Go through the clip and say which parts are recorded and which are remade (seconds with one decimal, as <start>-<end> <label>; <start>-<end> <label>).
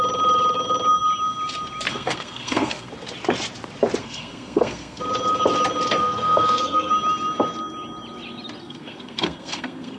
0.0-1.9 recorded; 1.9-2.9 remade; 2.9-4.0 recorded; 4.0-5.0 remade; 5.0-6.0 recorded; 6.0-6.9 remade; 6.9-8.6 recorded; 8.6-10.0 remade